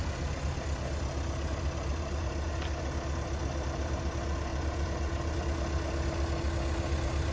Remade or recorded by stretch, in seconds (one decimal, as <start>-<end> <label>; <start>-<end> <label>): 0.0-1.9 recorded; 1.9-2.5 remade; 2.5-4.5 recorded; 4.5-5.4 remade; 5.4-7.3 recorded